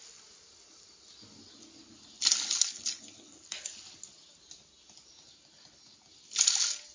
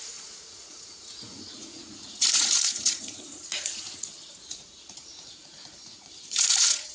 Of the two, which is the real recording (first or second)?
first